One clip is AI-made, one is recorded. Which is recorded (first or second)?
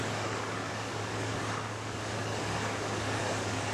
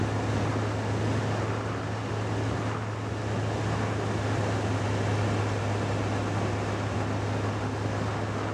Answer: second